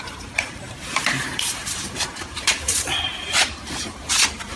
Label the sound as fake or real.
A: fake